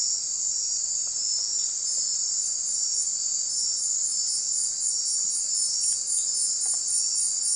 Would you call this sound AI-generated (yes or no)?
no